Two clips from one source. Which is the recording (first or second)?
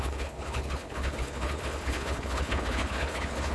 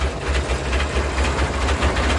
second